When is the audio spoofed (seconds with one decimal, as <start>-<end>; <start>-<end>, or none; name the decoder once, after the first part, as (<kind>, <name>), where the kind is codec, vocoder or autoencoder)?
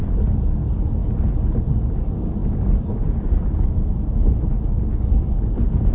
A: none